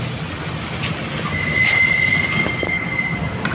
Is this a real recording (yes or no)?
yes